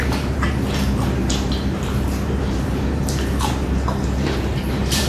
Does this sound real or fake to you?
fake